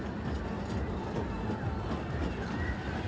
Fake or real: real